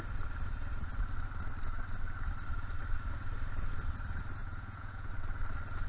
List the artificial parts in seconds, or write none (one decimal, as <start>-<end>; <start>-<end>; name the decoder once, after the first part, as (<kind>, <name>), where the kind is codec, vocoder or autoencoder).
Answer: 4.4-5.1 (vocoder, Vocos)